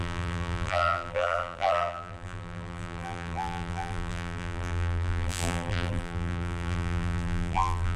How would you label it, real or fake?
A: fake